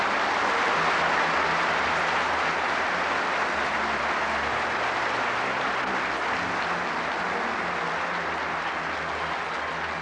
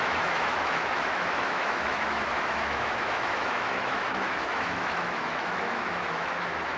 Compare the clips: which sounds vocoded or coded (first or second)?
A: second